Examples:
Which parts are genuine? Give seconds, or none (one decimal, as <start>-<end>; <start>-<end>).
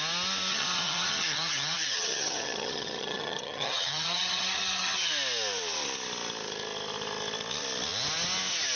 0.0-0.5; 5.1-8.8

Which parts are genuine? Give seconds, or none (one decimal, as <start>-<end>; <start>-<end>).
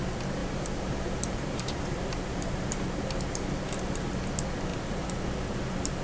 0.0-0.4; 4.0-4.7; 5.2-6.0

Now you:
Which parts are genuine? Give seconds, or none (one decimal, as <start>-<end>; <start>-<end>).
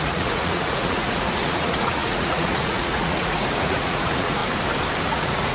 4.4-5.1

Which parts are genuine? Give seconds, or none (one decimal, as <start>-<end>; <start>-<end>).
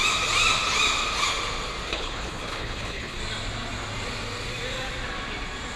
0.0-1.9; 3.2-5.8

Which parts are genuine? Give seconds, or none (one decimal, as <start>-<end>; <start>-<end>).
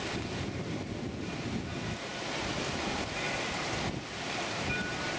0.0-5.2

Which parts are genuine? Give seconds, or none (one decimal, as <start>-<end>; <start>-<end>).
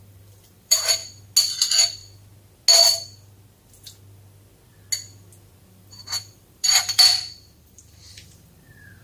1.0-1.6; 2.0-5.7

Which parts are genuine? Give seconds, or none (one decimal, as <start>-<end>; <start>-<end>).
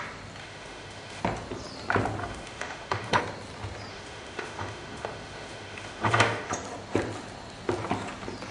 0.0-0.4; 1.2-2.2; 3.2-3.9; 6.5-8.5